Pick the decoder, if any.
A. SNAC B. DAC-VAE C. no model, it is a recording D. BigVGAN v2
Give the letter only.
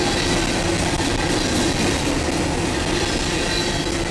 C